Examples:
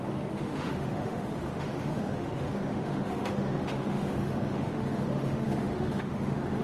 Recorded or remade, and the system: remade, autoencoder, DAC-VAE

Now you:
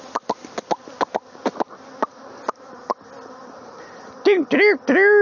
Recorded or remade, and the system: recorded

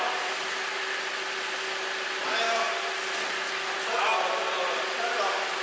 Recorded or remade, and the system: recorded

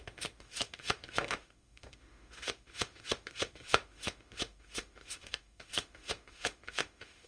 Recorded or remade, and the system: remade, autoencoder, DAC-VAE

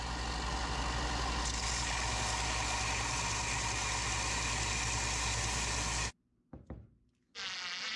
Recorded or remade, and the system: recorded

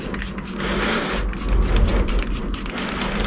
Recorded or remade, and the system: recorded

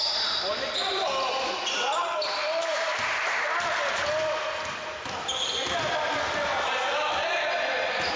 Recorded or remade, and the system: recorded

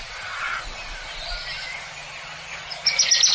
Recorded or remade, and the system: recorded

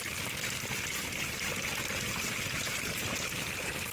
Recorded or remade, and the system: recorded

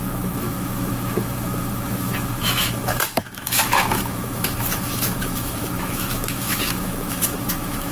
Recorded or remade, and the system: remade, autoencoder, DAC-VAE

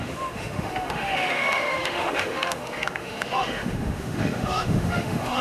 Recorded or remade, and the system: remade, autoencoder, DAC-VAE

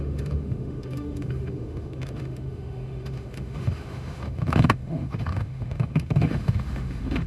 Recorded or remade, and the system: remade, autoencoder, DAC-VAE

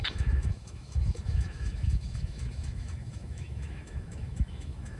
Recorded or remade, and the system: remade, autoencoder, DAC-VAE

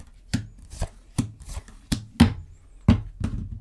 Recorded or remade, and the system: recorded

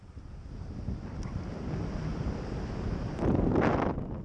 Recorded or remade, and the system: recorded